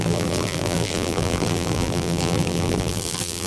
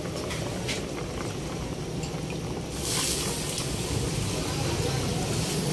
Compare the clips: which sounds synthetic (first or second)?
first